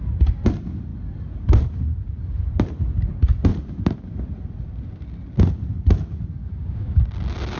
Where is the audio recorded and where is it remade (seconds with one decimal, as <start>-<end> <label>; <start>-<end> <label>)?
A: 0.0-6.4 recorded; 6.4-7.0 remade; 7.0-7.6 recorded